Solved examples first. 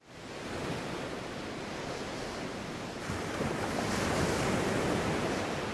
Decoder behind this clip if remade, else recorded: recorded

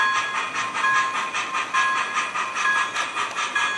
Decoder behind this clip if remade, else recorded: recorded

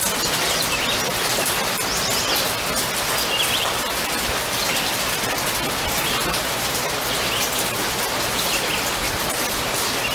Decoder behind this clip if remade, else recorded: recorded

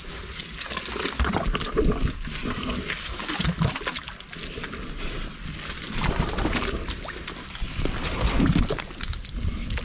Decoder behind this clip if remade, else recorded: recorded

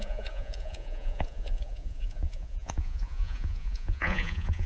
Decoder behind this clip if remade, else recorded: remade, vocoder, Vocos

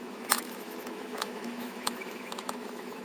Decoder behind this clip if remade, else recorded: remade, autoencoder, DAC-VAE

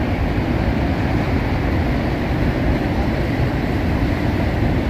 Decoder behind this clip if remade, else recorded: remade, vocoder, BigVGAN v2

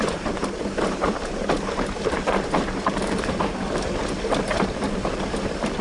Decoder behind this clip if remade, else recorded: remade, vocoder, BigVGAN v2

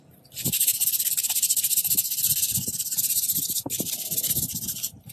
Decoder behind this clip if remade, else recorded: recorded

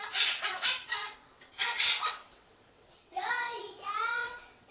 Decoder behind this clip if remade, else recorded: remade, vocoder, WaveNeXt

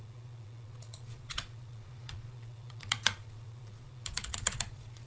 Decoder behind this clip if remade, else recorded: remade, vocoder, Vocos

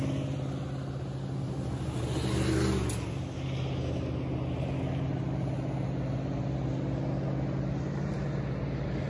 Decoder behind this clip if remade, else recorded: recorded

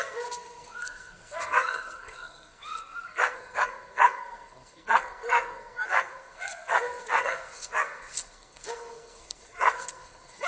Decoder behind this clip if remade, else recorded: remade, codec, SNAC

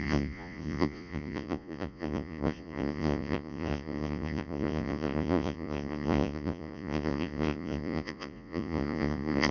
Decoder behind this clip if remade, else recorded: remade, vocoder, Vocos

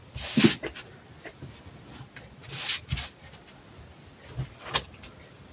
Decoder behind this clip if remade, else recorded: recorded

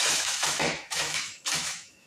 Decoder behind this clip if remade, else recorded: remade, autoencoder, DAC-VAE